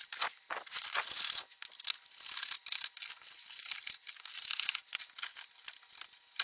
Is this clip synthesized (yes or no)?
no